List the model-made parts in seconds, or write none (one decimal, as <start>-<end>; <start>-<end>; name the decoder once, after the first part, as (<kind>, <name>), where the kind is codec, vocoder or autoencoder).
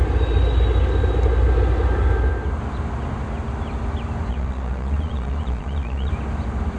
4.3-6.1 (vocoder, Vocos)